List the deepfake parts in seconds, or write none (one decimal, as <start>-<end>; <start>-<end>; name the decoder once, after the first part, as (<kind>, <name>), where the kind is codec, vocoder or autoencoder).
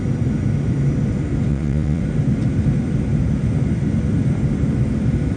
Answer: 1.5-2.0 (vocoder, Vocos)